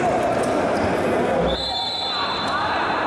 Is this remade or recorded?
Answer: recorded